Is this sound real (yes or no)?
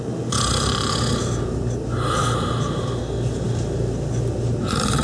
yes